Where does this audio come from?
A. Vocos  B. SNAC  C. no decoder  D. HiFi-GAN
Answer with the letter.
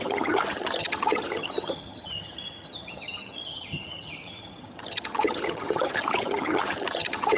D